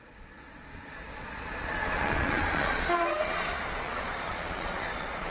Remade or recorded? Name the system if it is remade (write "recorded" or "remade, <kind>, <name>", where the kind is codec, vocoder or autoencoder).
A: remade, vocoder, Vocos